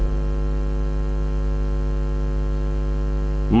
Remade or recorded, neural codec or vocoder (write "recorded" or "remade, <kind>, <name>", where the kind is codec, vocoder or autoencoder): recorded